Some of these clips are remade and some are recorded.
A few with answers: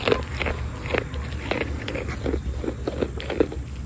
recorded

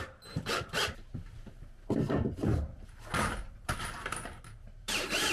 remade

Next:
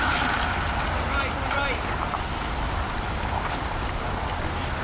recorded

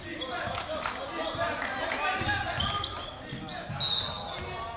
recorded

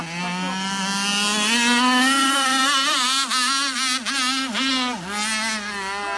recorded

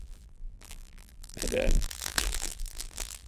remade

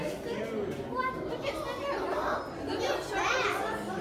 recorded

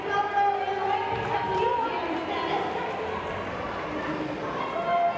recorded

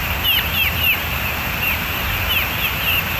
remade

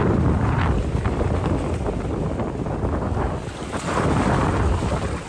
recorded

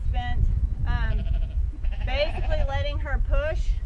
recorded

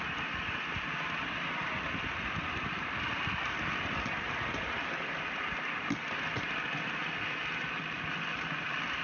recorded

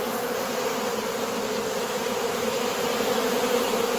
remade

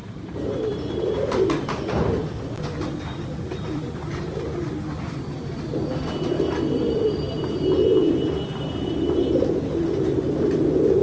remade